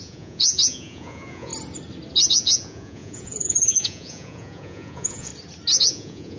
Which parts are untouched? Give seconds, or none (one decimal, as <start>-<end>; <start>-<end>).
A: 1.5-2.3; 5.3-5.8